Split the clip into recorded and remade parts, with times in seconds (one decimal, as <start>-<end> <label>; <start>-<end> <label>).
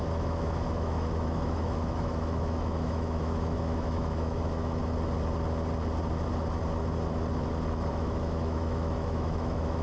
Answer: 0.0-4.8 remade; 4.8-7.9 recorded; 7.9-9.8 remade